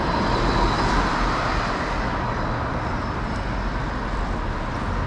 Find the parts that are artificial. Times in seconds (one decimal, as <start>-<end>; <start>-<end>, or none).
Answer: none